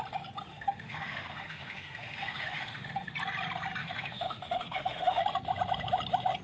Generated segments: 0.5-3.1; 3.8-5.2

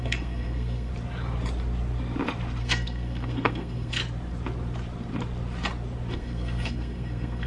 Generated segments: 0.0-0.9; 2.6-4.0; 6.1-7.5

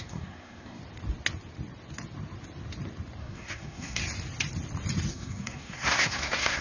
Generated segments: 0.0-0.8; 3.2-4.0; 5.1-6.6

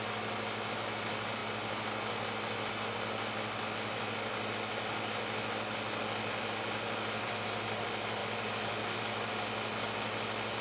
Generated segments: none

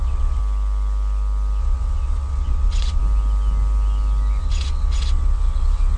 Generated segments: 0.0-0.4; 1.6-3.0; 4.4-6.0